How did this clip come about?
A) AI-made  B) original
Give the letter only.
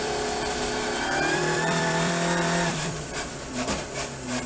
A